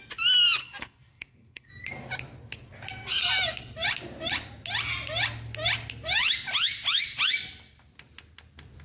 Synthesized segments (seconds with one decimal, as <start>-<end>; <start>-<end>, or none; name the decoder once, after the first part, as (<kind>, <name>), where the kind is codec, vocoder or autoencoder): 0.6-1.7 (codec, SNAC)